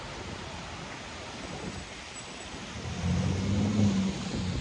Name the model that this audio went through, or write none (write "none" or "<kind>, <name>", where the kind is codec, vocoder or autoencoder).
none